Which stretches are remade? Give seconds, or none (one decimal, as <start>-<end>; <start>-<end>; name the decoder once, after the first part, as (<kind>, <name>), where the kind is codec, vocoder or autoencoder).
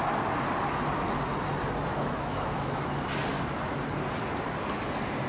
1.9-2.9 (autoencoder, DAC-VAE)